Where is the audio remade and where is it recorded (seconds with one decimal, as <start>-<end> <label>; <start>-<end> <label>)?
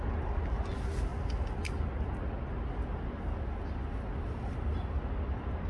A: 0.0-5.7 recorded